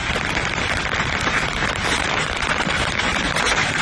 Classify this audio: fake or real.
real